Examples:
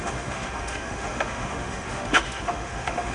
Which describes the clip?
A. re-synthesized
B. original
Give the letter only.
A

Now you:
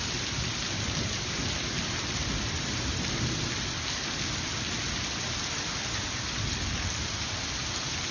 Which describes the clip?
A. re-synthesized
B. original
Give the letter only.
B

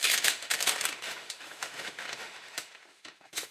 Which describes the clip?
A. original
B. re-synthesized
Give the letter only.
B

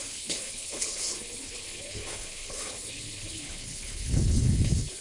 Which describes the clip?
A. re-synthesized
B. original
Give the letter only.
A